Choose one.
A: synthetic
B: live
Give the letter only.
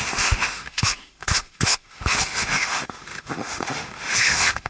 A